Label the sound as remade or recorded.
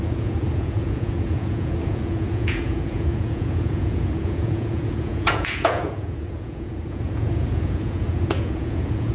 remade